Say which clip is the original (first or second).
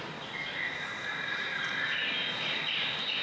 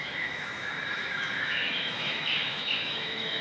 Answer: first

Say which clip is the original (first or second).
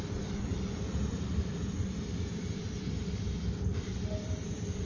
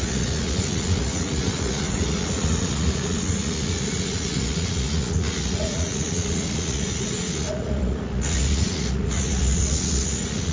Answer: first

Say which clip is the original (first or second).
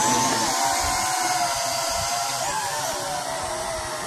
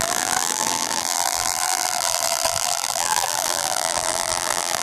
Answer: first